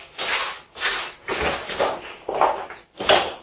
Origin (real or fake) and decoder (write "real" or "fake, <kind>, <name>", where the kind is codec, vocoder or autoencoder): real